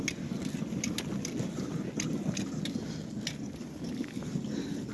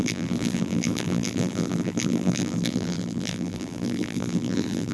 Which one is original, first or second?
first